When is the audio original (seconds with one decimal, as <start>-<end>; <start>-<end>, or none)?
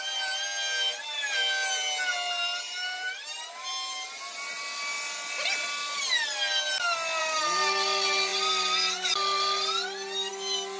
0.0-10.8